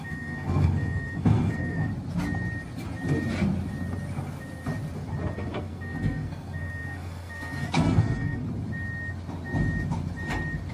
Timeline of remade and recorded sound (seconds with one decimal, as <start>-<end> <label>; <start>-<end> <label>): 0.0-1.9 remade; 1.9-5.3 recorded; 5.3-8.4 remade; 8.4-10.7 recorded